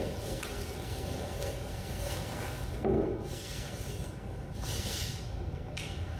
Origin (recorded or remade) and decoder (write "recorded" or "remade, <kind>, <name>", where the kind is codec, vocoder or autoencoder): remade, codec, SNAC